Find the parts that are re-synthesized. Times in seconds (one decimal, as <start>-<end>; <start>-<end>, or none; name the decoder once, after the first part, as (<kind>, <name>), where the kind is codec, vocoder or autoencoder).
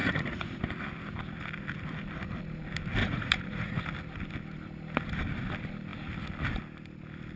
0.0-0.6 (vocoder, Vocos); 3.0-3.7